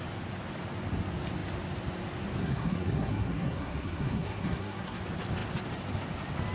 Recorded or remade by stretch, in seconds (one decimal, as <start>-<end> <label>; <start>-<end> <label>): 0.0-2.4 recorded; 2.4-5.0 remade; 5.0-6.5 recorded